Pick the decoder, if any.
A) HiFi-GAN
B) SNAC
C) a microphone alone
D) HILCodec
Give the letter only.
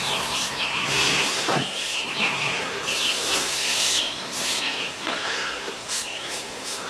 B